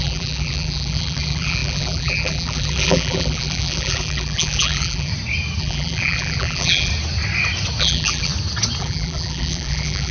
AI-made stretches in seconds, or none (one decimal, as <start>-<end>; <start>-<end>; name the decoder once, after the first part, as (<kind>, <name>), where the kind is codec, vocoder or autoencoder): 0.0-5.1 (vocoder, BigVGAN v2); 5.6-6.9; 7.8-8.3; 8.8-10.1